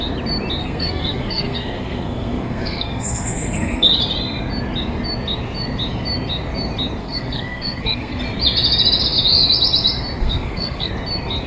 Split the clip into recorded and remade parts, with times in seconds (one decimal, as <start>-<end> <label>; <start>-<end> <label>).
0.0-0.6 recorded; 0.6-3.9 remade; 3.9-7.0 recorded; 7.0-8.2 remade; 8.2-10.2 recorded; 10.2-10.9 remade; 10.9-11.5 recorded